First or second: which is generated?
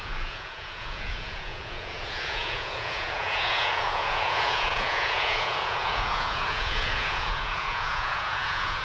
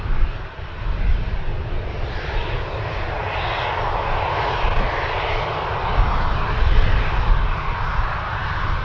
first